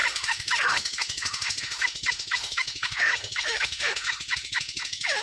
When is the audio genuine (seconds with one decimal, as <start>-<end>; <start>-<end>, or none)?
none